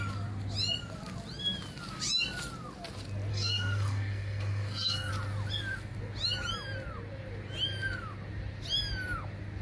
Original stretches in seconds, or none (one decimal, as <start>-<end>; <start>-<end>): 0.0-3.3; 5.1-9.6